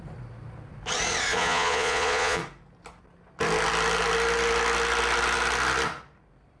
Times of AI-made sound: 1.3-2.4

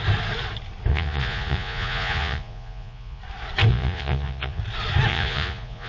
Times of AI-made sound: 0.9-3.2; 3.7-4.6; 5.1-5.9

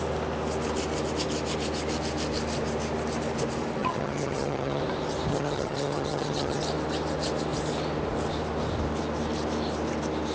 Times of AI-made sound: 3.8-4.8; 5.3-6.6

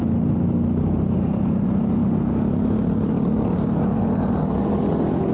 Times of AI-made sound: none

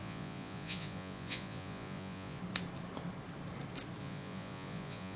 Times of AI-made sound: 0.0-2.4; 4.0-5.2

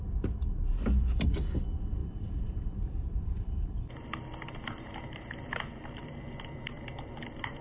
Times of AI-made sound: 2.0-6.2